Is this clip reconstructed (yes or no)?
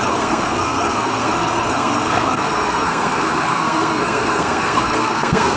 yes